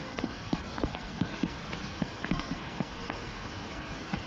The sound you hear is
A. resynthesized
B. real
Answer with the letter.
A